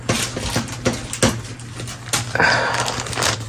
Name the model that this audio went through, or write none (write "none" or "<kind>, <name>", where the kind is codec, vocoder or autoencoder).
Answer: none